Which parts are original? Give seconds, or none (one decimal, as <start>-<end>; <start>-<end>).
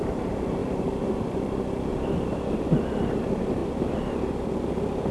1.9-3.2; 3.6-5.1